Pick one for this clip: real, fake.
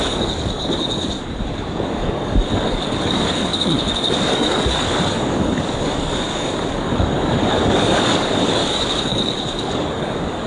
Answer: fake